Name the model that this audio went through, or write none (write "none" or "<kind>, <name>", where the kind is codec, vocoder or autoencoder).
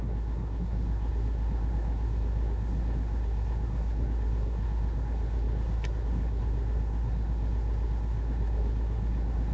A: codec, SNAC